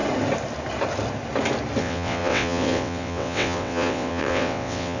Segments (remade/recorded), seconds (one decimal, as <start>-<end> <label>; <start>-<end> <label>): 0.0-1.8 recorded; 1.8-5.0 remade